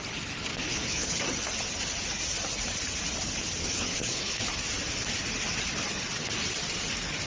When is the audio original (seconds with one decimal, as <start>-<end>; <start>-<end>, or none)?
0.0-0.5; 1.2-3.6; 4.5-7.3